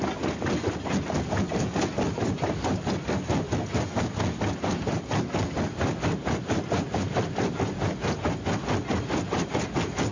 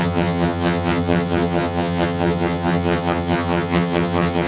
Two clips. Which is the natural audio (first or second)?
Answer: first